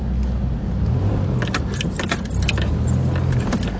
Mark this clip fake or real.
real